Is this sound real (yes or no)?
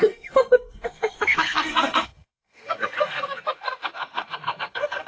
no